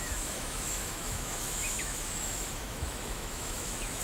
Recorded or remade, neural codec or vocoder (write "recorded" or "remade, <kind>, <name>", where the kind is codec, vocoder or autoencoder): remade, autoencoder, DAC-VAE